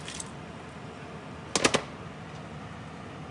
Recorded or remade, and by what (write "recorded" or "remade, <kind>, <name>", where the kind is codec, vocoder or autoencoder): recorded